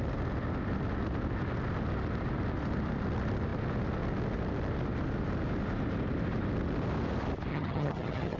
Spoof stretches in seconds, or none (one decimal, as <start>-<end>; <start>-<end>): 7.5-8.4